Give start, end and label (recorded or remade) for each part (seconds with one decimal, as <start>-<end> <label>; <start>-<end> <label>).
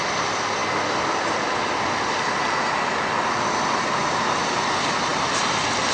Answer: 0.0-5.9 recorded